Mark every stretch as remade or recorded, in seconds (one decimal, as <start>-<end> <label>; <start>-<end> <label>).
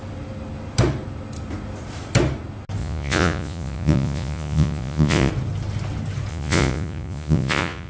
0.0-2.8 recorded; 2.8-5.3 remade; 5.3-6.3 recorded; 6.3-7.9 remade